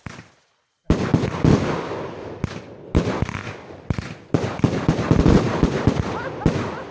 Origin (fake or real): real